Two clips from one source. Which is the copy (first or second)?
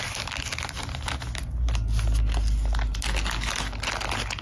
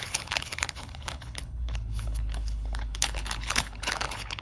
second